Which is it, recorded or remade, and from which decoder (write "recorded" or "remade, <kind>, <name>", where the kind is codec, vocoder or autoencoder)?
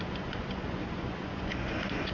remade, vocoder, Vocos